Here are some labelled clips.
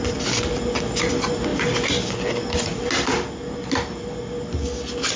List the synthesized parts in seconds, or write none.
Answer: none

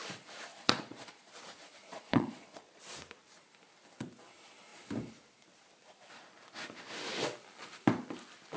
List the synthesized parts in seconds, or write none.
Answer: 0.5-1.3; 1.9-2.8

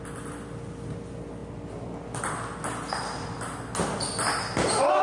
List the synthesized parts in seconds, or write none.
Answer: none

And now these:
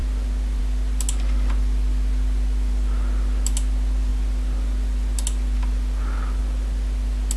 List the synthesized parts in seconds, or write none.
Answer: none

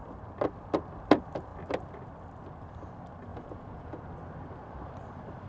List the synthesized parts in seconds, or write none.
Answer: 3.3-4.0

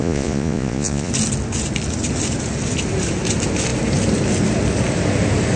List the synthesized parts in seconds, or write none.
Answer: 0.0-1.1